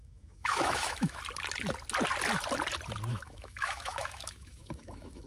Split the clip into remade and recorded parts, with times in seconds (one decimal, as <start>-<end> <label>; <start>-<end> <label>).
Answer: 0.0-1.2 remade; 1.2-3.1 recorded; 3.1-5.3 remade